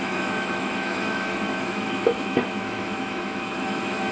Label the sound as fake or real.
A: fake